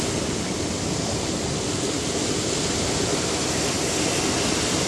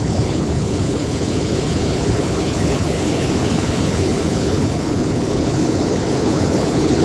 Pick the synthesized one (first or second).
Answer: second